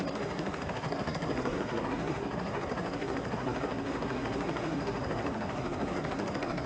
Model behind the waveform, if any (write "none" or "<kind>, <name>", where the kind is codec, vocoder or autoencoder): codec, SNAC